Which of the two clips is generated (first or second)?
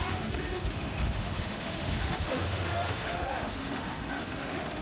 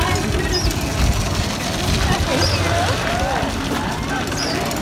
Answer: first